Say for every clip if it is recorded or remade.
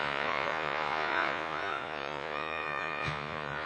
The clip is remade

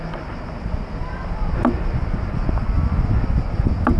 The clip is recorded